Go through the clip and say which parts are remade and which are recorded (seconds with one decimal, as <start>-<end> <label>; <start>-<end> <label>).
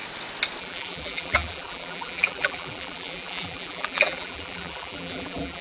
0.0-0.6 recorded; 0.6-5.6 remade